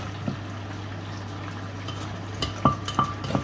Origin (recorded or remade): recorded